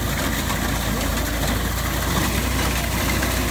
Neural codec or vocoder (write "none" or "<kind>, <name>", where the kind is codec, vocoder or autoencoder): none